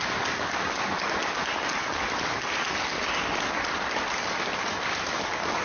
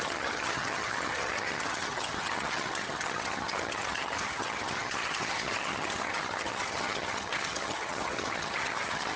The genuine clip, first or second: first